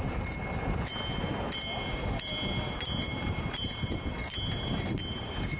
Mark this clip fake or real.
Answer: real